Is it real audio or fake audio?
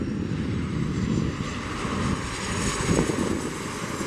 real